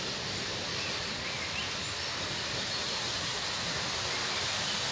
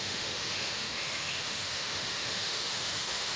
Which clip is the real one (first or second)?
first